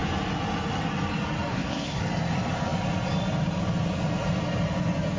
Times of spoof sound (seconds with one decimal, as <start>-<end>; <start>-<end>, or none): 1.5-2.0